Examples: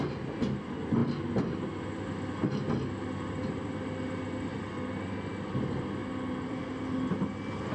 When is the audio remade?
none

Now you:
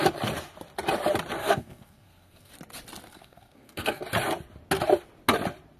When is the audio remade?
1.4-2.5; 3.1-4.0

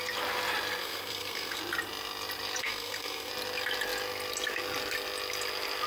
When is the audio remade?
0.8-1.6; 2.6-3.3